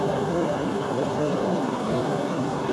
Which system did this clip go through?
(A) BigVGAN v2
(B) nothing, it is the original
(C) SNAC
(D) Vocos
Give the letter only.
C